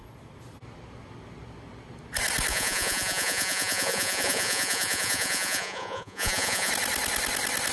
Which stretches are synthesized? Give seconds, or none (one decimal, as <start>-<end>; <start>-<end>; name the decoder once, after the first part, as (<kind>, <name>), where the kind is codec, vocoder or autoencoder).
2.5-6.7 (vocoder, Vocos)